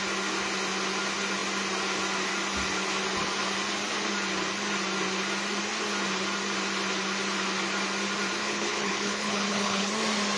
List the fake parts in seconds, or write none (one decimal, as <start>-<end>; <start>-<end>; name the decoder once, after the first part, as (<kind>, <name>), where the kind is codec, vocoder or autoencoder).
8.4-9.9 (codec, HILCodec)